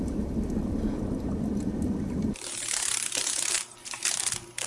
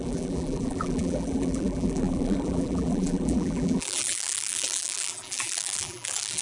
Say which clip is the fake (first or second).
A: second